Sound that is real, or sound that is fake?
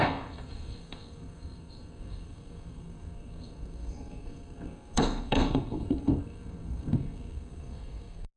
fake